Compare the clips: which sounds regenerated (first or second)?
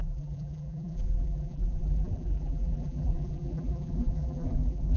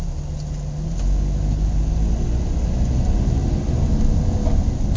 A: first